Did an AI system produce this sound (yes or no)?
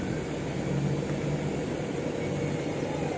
no